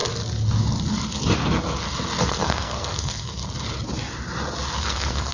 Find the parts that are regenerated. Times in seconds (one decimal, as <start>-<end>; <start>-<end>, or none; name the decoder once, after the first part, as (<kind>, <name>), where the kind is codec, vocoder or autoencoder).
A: 2.2-3.4 (codec, SNAC); 4.8-5.3